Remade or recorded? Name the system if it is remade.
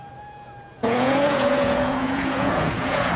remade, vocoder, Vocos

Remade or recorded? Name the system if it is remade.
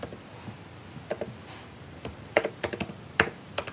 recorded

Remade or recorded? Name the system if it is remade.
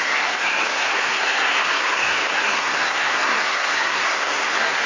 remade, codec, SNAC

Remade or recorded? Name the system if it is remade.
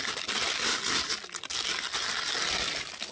recorded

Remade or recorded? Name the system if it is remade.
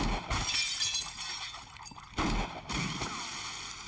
recorded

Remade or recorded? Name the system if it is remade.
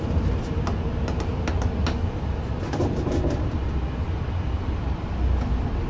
recorded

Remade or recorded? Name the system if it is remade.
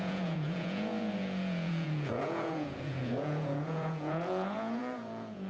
remade, vocoder, Vocos